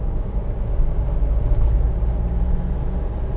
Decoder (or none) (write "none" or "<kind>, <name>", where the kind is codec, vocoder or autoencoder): none